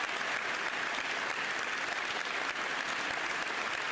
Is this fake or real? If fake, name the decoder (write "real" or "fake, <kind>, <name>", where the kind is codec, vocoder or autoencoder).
real